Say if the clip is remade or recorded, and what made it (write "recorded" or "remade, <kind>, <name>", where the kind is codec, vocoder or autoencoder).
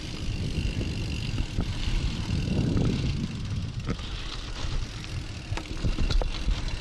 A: recorded